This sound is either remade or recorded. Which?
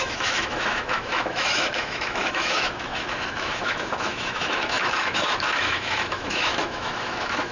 remade